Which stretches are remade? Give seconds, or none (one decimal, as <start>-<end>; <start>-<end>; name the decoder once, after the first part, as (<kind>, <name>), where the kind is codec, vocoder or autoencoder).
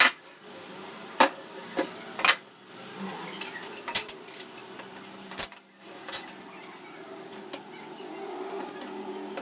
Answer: none